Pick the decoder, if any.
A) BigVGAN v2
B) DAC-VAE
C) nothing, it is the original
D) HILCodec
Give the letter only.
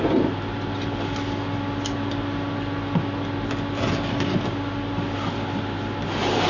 C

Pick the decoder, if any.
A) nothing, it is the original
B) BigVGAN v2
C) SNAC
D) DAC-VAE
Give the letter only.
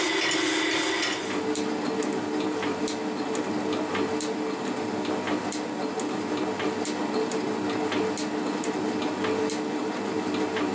A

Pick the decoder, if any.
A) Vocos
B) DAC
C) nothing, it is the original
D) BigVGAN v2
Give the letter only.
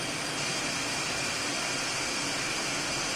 D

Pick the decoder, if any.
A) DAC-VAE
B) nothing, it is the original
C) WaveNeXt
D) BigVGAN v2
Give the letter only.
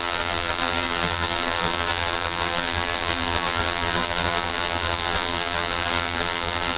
D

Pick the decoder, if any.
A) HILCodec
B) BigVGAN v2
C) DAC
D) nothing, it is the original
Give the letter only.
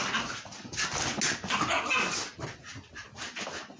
D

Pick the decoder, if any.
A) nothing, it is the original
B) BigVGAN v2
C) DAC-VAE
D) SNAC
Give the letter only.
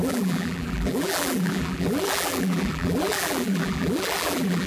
B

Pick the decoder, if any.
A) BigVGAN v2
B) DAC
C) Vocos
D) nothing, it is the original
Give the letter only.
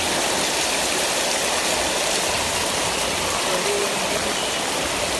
D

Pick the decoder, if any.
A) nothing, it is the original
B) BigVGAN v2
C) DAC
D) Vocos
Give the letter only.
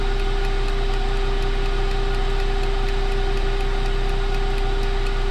A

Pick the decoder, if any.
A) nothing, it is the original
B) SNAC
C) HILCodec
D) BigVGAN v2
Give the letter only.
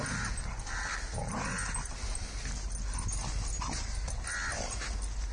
A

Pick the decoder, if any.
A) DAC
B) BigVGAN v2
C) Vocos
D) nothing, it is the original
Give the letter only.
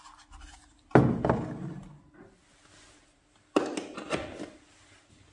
D